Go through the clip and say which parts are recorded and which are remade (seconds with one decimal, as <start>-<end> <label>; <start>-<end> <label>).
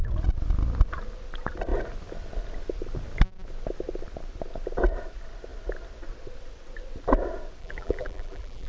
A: 0.0-7.6 recorded; 7.6-8.7 remade